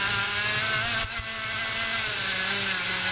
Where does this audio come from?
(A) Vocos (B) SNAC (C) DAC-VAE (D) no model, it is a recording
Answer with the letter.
D